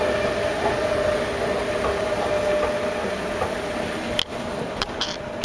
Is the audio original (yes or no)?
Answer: yes